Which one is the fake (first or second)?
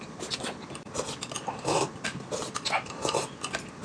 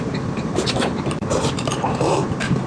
second